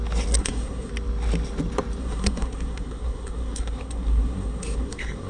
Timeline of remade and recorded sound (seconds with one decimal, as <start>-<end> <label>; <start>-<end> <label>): 0.0-0.4 recorded; 0.4-0.9 remade; 0.9-2.0 recorded; 2.0-5.3 remade